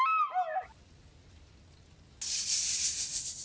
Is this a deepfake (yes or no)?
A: no